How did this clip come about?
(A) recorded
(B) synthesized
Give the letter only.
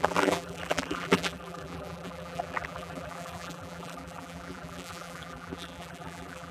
B